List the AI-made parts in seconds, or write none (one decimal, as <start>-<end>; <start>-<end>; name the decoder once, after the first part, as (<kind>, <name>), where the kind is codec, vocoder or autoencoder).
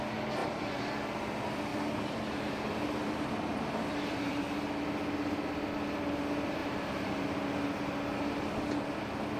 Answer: 0.4-0.9 (vocoder, BigVGAN v2); 1.7-4.4; 6.6-7.1